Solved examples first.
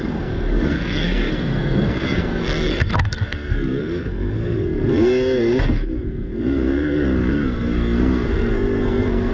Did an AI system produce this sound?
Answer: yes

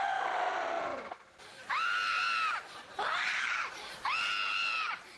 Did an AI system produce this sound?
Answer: no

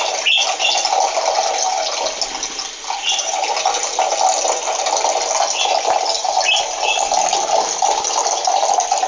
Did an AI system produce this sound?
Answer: no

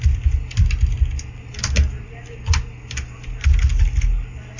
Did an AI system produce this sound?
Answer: no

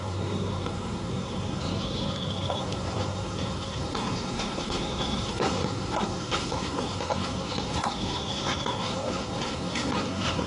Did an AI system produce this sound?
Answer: yes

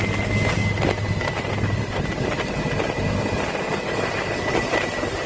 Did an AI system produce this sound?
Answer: no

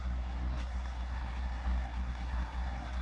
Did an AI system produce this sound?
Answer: yes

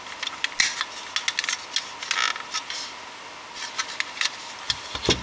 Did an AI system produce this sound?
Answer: no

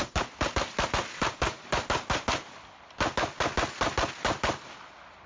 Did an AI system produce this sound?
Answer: no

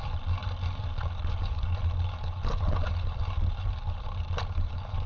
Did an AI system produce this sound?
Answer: no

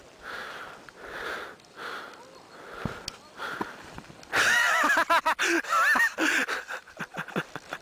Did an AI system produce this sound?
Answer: no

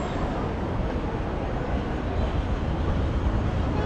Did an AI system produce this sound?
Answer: no